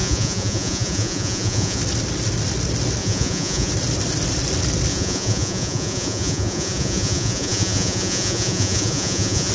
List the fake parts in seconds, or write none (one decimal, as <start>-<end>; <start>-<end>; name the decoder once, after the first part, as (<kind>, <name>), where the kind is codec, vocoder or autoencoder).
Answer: 0.0-1.8 (vocoder, Vocos); 3.0-3.7; 4.9-9.5